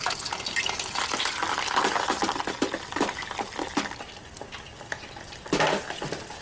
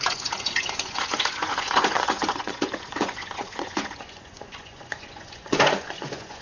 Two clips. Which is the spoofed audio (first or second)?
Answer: second